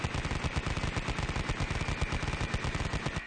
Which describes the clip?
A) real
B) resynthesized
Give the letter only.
A